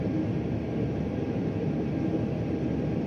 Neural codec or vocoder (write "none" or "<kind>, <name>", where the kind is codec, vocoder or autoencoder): none